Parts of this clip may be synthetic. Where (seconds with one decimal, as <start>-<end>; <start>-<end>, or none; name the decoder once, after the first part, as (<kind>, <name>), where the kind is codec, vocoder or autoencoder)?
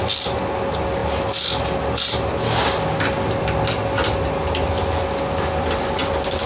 none